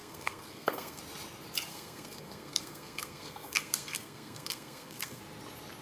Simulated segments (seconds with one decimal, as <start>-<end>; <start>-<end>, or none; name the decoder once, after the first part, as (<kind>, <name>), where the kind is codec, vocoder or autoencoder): 0.0-1.0 (codec, SNAC); 1.7-5.2